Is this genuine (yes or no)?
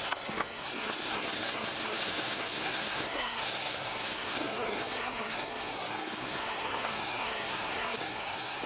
no